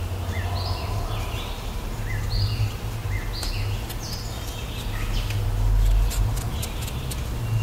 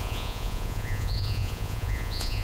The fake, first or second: second